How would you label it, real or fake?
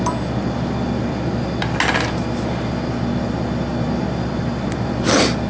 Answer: real